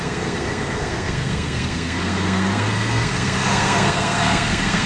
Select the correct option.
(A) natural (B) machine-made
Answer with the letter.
B